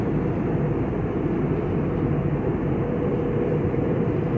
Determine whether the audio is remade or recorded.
remade